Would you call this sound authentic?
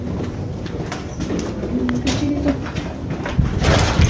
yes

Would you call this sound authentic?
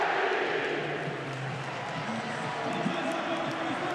yes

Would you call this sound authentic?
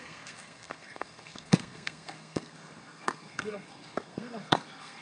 no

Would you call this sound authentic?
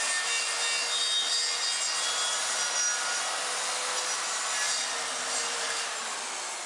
yes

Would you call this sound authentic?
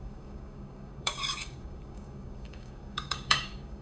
no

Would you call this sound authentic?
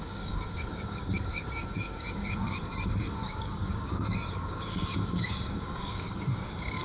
no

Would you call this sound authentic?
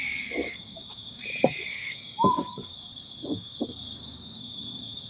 no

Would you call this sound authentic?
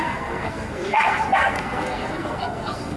no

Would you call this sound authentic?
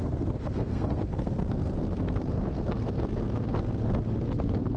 no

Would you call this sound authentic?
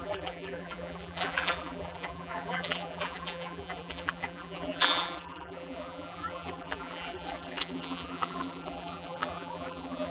no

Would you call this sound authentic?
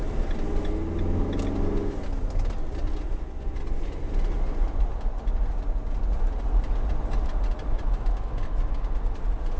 yes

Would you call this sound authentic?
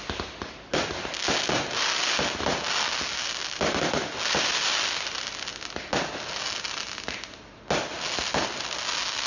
yes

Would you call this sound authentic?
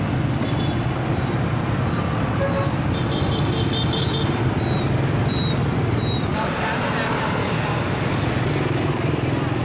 yes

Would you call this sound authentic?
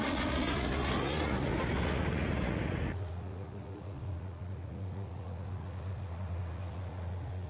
no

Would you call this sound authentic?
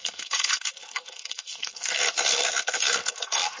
no